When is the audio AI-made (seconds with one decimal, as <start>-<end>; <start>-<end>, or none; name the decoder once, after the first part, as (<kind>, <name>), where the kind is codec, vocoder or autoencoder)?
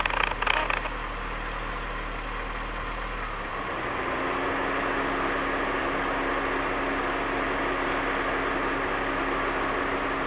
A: none